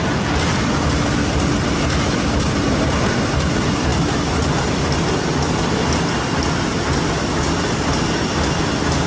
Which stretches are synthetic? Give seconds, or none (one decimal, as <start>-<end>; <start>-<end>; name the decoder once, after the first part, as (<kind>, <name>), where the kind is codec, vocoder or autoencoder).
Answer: none